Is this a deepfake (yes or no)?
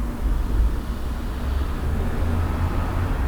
no